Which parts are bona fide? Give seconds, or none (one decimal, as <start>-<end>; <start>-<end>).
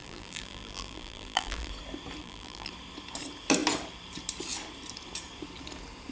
1.7-2.2; 2.7-6.1